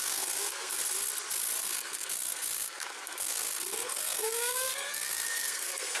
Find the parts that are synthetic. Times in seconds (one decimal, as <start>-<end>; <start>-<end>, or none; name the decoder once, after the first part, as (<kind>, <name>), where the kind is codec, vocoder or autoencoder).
0.0-0.8 (codec, SNAC); 1.6-6.0